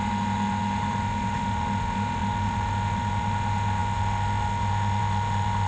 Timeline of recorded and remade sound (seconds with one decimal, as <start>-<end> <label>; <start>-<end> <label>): 0.0-5.7 remade